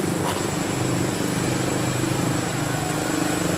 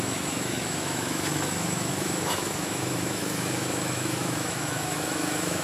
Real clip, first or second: first